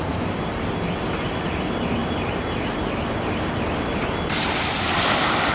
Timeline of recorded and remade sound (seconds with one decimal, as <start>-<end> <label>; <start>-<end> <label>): 0.0-5.5 recorded